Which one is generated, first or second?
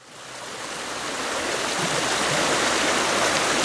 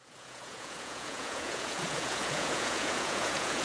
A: second